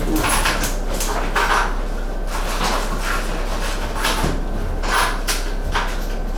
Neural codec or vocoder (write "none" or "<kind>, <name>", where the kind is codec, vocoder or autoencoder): none